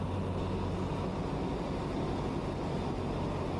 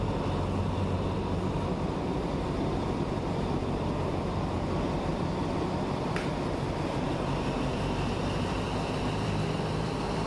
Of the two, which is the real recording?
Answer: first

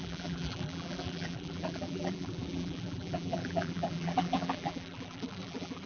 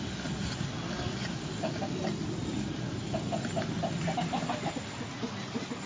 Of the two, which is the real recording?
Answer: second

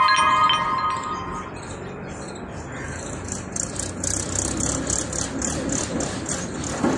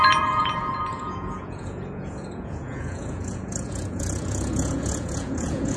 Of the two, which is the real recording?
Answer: first